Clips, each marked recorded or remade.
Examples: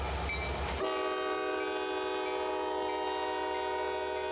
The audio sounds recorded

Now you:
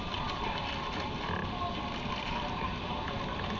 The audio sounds recorded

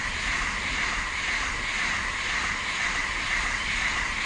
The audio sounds recorded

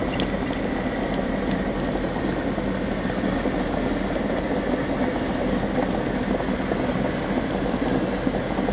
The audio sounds recorded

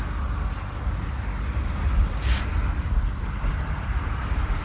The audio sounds recorded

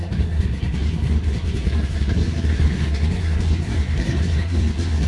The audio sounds remade